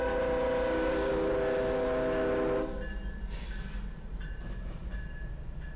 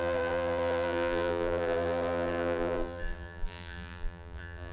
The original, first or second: first